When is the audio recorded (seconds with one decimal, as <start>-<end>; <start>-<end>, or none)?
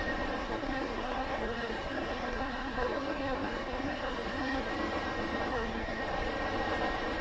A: 0.0-0.4; 4.7-5.5; 6.0-7.2